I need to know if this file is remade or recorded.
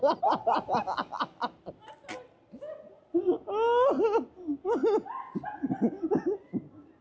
recorded